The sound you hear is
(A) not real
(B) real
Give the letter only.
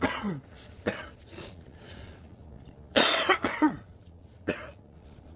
A